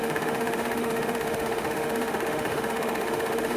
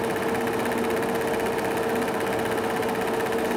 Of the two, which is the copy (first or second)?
first